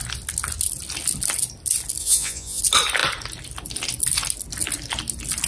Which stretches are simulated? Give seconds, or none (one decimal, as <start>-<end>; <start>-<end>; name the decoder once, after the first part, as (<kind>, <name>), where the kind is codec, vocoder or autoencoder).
2.0-2.6 (vocoder, Vocos)